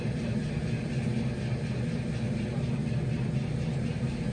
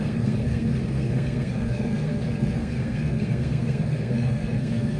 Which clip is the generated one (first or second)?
second